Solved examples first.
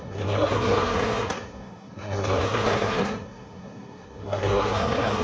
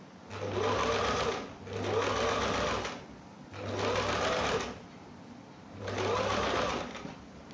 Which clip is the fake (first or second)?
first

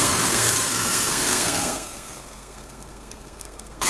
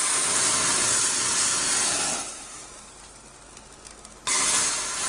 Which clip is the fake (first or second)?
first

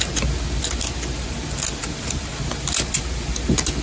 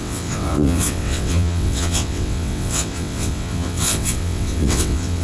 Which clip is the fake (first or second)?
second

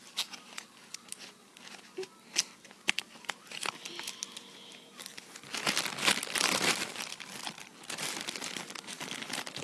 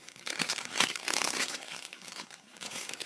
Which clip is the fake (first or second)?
second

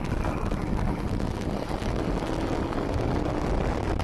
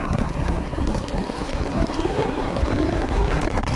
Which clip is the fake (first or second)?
second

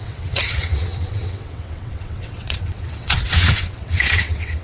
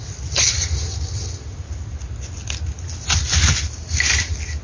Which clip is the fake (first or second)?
first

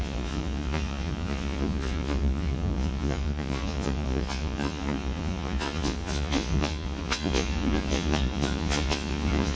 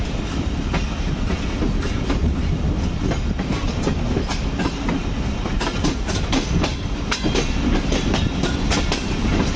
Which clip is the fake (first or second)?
first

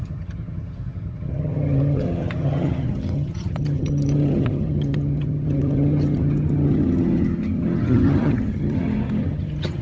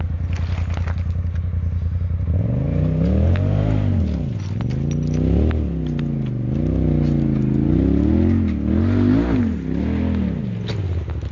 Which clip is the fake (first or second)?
first